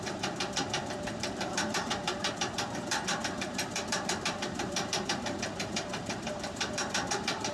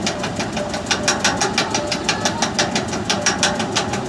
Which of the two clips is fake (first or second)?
first